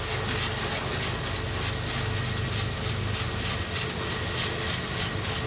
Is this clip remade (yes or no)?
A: no